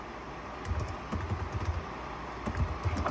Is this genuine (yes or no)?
yes